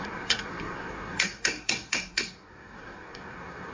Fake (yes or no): yes